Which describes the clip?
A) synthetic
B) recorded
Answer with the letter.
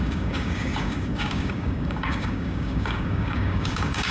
A